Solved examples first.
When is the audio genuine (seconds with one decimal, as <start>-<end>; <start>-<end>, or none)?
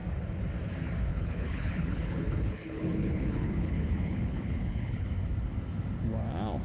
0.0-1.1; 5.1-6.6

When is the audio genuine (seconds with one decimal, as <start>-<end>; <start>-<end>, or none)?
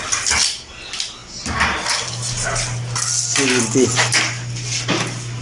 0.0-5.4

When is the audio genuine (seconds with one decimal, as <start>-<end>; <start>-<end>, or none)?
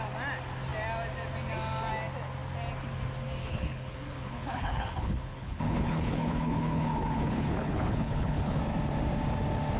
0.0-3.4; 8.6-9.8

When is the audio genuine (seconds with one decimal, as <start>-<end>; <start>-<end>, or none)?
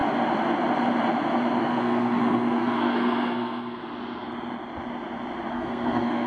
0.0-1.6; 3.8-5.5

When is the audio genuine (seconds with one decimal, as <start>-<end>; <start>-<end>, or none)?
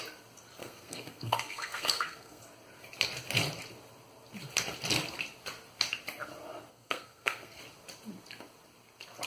0.0-0.6; 2.4-6.7; 7.6-9.3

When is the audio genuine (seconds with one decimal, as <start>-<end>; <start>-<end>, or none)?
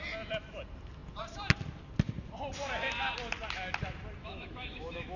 0.0-4.2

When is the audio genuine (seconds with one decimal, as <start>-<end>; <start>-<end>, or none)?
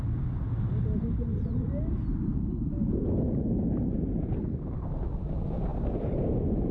0.0-6.7